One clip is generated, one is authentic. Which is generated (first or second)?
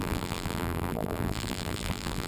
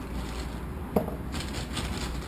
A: first